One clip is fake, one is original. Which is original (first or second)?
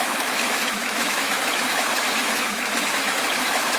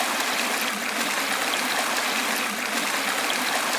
second